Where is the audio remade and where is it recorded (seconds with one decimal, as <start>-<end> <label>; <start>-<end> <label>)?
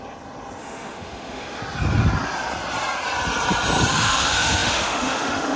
0.0-0.6 recorded; 0.6-1.6 remade; 1.6-3.9 recorded; 3.9-5.6 remade